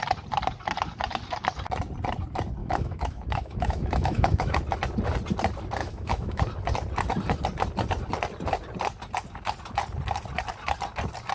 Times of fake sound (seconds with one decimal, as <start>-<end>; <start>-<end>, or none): 2.6-4.6; 5.8-6.4